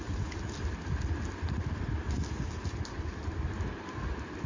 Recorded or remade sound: recorded